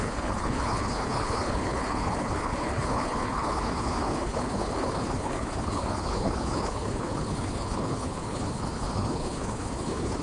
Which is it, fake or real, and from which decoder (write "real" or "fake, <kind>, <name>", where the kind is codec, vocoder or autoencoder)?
fake, codec, HILCodec